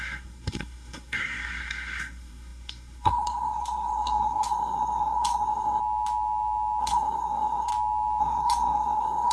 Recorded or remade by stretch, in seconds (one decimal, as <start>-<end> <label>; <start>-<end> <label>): 0.0-5.8 remade; 5.8-6.8 recorded; 6.8-7.7 remade; 7.7-8.2 recorded; 8.2-9.3 remade